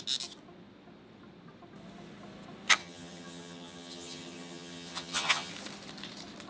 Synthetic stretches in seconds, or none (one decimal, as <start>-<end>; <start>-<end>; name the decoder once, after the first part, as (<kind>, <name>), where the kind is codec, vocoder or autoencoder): 2.8-5.5 (vocoder, HiFi-GAN)